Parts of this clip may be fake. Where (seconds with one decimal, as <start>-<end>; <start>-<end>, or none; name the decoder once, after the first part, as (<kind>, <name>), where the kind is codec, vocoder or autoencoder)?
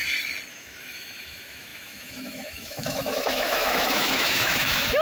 0.5-5.0 (autoencoder, DAC-VAE)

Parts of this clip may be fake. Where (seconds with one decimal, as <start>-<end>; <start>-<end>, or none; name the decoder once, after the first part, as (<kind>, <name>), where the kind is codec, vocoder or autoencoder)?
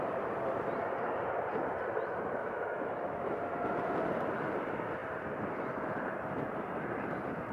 2.4-3.4 (autoencoder, DAC-VAE)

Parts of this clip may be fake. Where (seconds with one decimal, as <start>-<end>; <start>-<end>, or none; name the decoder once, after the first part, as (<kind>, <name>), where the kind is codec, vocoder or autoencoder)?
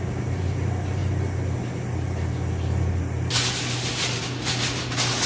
none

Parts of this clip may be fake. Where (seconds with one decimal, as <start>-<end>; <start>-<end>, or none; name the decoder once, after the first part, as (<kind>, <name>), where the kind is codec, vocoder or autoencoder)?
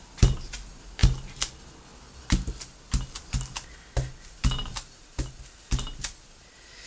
none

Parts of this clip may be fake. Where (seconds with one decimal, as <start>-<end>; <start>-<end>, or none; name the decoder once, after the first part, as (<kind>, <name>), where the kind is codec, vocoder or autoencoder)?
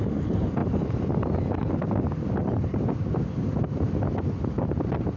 none